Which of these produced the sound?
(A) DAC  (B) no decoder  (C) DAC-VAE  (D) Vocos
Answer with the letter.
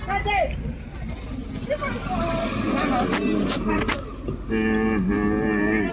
B